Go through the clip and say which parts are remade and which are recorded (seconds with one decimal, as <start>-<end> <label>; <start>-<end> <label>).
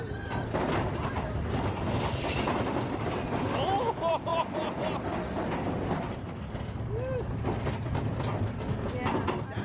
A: 0.0-9.6 recorded